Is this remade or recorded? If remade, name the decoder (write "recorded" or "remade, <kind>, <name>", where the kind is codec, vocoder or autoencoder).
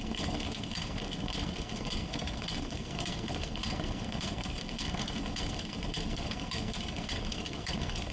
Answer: remade, codec, SNAC